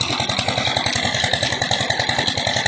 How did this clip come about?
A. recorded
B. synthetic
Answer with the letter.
A